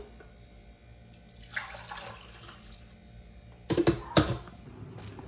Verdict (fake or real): real